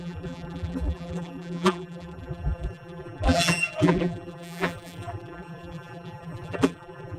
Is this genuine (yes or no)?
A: no